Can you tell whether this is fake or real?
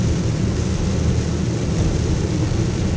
real